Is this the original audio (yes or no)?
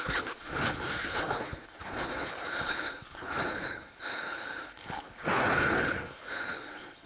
no